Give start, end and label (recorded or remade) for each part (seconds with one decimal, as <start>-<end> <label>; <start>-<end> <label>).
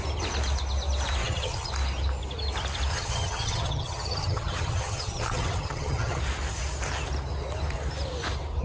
0.0-1.2 recorded; 1.2-1.7 remade; 1.7-2.9 recorded; 2.9-6.2 remade; 6.2-8.6 recorded